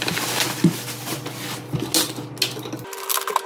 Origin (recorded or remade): recorded